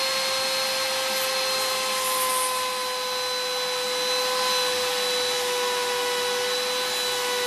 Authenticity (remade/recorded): recorded